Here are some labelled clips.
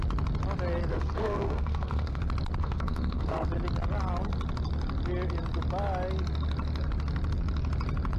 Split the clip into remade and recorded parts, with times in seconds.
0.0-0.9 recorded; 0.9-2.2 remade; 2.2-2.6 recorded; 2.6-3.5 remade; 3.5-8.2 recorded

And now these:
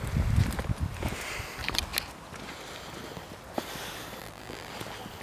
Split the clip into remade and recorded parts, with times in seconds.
0.0-4.2 recorded; 4.2-4.7 remade; 4.7-5.2 recorded